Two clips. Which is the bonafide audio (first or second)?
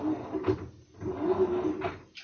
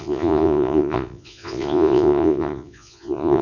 first